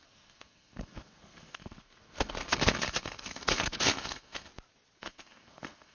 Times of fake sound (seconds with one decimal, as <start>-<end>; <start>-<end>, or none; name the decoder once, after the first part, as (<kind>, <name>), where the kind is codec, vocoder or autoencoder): 0.0-4.5 (codec, SNAC); 5.0-5.9